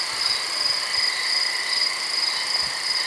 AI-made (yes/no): no